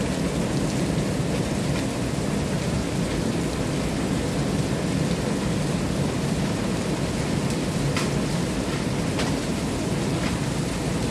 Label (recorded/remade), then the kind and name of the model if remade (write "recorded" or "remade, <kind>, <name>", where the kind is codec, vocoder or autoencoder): recorded